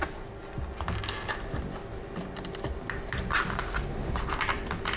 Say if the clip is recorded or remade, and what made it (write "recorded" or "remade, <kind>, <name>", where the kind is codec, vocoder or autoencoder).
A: recorded